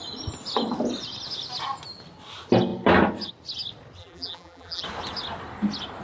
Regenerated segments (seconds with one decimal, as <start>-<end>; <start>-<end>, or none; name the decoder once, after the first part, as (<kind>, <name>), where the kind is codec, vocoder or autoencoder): 4.0-4.8 (vocoder, BigVGAN v2)